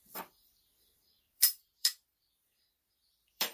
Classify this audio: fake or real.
fake